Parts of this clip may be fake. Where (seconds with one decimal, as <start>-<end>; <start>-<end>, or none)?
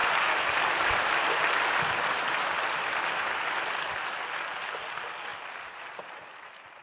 0.0-6.8